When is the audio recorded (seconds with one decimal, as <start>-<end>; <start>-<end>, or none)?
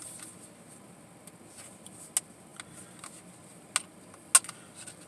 0.0-5.1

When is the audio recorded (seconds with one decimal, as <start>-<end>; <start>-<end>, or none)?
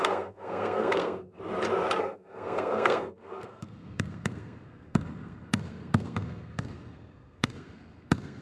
1.4-2.0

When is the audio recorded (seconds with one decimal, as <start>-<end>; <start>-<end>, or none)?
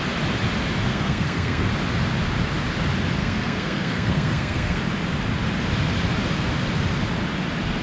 0.0-0.9; 1.7-3.2; 4.8-7.8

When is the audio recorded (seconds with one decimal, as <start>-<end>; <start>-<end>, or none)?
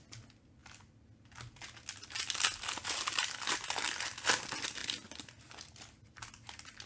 0.0-6.9